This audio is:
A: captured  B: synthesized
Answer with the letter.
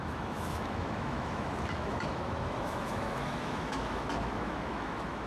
B